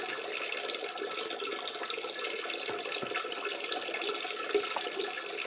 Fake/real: real